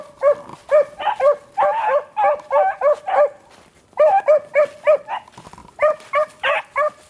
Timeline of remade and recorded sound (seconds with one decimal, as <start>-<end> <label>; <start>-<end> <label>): 0.0-5.6 recorded; 5.6-6.4 remade; 6.4-7.1 recorded